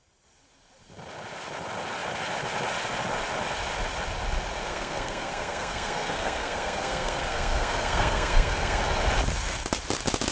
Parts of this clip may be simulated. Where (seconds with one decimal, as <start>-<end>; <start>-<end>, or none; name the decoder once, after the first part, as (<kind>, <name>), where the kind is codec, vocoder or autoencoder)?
4.7-8.8 (codec, SNAC)